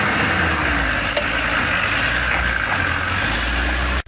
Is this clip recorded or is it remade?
recorded